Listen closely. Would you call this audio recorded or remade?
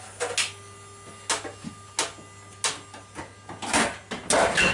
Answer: recorded